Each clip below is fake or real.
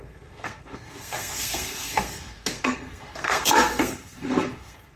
fake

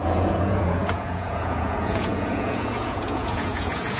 fake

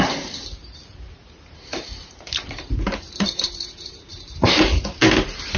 fake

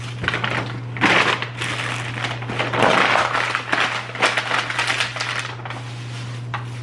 real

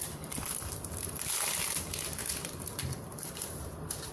fake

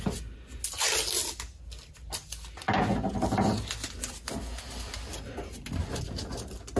real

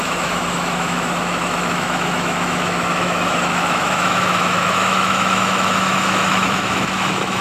fake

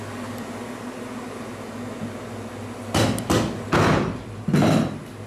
real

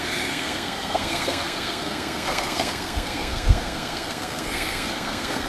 fake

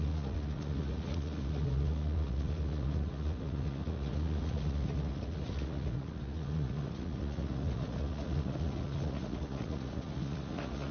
fake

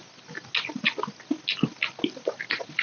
real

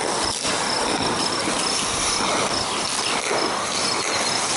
real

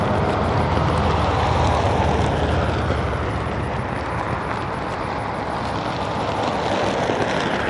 real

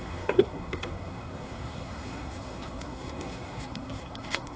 fake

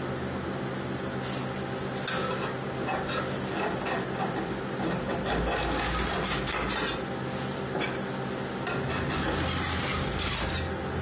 real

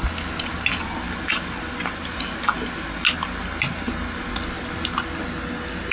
real